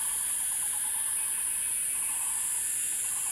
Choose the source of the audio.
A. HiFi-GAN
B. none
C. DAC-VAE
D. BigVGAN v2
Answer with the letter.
B